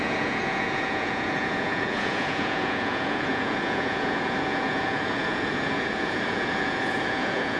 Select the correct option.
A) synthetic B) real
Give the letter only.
A